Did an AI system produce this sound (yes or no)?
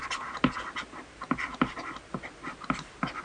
no